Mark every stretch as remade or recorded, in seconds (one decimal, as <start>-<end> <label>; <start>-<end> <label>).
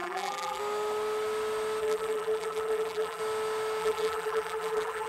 0.0-0.6 remade; 0.6-1.8 recorded; 1.8-3.2 remade; 3.2-3.8 recorded; 3.8-5.1 remade